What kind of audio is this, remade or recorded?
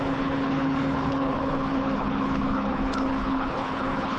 remade